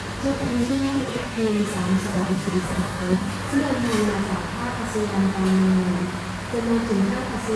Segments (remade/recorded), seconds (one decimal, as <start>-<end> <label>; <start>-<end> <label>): 0.0-0.4 recorded; 0.4-1.7 remade; 1.7-2.1 recorded; 2.1-3.3 remade; 3.3-7.6 recorded